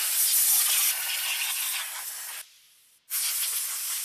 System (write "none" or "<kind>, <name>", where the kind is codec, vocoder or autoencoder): none